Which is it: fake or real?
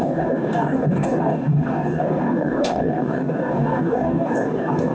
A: fake